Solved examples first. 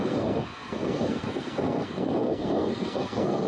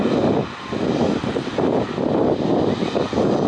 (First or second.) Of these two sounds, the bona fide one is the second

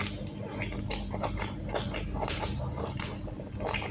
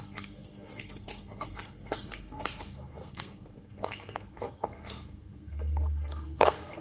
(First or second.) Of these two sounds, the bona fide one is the first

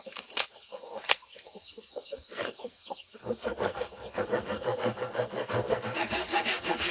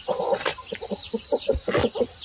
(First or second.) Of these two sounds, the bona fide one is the second